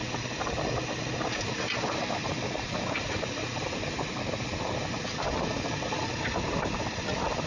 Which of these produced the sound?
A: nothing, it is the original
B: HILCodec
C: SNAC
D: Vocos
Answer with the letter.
A